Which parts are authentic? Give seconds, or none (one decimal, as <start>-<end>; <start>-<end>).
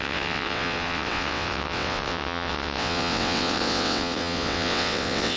none